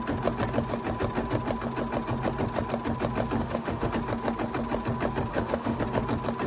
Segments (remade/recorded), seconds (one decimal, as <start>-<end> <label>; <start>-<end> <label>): 0.0-3.4 recorded; 3.4-3.9 remade; 3.9-5.3 recorded; 5.3-5.8 remade; 5.8-6.5 recorded